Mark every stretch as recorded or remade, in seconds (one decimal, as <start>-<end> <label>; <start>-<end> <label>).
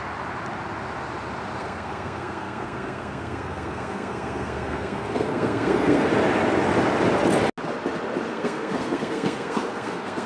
0.0-1.6 recorded; 1.6-6.1 remade; 6.1-8.3 recorded; 8.3-10.3 remade